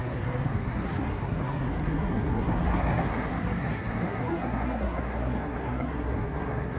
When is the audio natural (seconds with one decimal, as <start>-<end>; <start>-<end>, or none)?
none